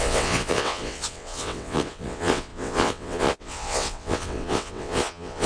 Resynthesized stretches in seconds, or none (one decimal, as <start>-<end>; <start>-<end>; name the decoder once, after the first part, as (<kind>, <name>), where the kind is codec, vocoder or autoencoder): 0.0-5.5 (vocoder, WaveNeXt)